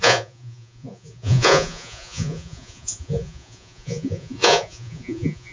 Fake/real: fake